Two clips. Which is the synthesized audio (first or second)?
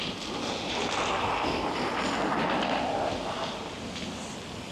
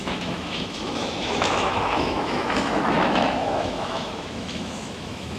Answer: second